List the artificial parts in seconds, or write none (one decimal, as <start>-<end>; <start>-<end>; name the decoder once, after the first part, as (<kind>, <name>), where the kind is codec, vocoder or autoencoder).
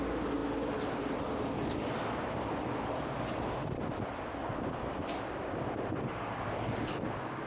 none